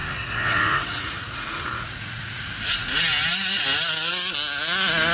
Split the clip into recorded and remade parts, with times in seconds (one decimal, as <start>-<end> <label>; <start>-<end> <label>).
0.0-2.5 remade; 2.5-5.1 recorded